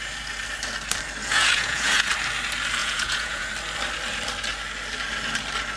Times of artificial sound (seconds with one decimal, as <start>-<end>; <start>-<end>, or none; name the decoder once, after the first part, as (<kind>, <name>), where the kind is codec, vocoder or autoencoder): 1.2-2.1 (vocoder, Vocos); 2.8-3.5